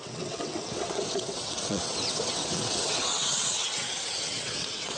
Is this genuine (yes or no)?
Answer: no